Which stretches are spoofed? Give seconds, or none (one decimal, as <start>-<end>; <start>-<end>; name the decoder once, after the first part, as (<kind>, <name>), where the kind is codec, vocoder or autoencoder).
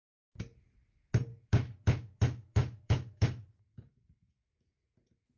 1.3-4.5 (autoencoder, DAC-VAE)